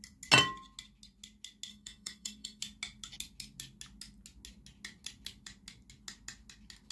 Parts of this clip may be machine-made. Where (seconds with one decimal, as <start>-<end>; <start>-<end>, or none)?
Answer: 1.7-2.6